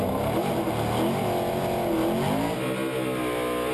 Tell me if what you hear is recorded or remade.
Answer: recorded